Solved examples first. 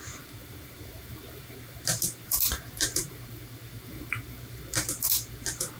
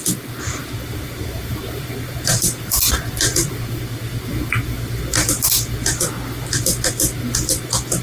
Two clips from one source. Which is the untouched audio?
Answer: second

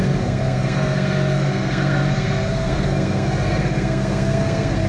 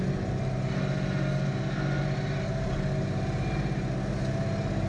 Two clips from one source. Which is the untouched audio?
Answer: second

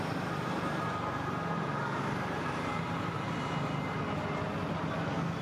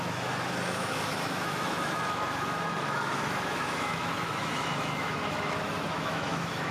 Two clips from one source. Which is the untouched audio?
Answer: first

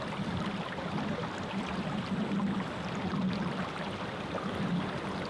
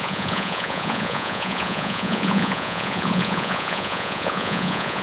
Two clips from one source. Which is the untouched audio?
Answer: first